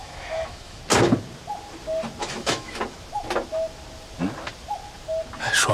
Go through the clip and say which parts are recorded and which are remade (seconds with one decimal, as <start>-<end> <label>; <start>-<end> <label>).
0.0-0.8 remade; 0.8-2.2 recorded; 2.2-2.8 remade; 2.8-5.7 recorded